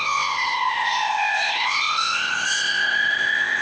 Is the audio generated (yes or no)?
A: yes